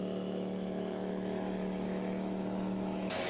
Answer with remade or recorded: remade